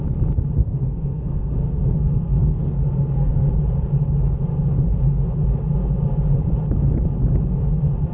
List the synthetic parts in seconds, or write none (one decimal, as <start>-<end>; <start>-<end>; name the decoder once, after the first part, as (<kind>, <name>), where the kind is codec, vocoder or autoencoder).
0.6-3.5 (codec, SNAC)